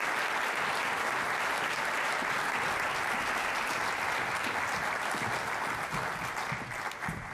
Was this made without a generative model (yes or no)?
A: yes